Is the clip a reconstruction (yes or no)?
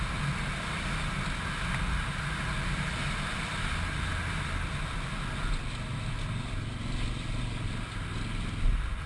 no